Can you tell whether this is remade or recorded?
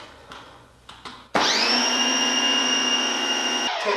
remade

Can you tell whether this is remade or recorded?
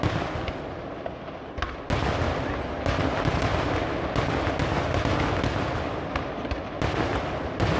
recorded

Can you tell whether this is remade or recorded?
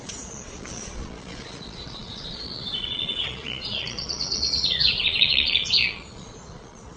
remade